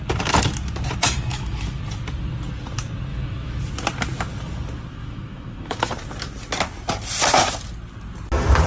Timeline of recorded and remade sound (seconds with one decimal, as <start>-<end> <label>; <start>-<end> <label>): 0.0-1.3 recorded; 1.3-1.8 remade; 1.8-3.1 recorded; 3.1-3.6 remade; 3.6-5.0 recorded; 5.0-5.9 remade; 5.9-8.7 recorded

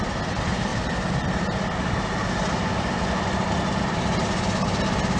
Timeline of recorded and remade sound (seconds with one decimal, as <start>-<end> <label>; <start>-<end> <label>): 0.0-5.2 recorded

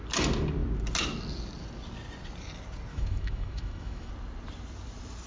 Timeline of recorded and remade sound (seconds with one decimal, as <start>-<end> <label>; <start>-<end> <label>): 0.0-2.9 recorded; 2.9-4.1 remade; 4.1-5.3 recorded

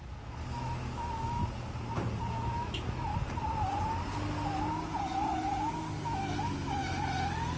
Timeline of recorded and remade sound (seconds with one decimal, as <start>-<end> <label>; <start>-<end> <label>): 0.0-1.4 remade; 1.4-2.3 recorded; 2.3-3.1 remade; 3.1-5.7 recorded; 5.7-6.8 remade; 6.8-7.6 recorded